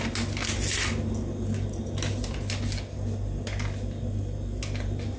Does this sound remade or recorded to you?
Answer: recorded